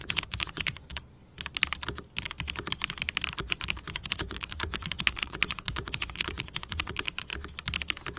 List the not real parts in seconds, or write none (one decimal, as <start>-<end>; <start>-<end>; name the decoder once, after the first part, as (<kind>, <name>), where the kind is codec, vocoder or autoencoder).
0.0-0.9 (vocoder, Vocos); 3.4-7.3